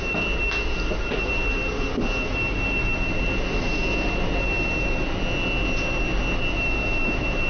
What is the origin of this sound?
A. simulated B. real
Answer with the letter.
B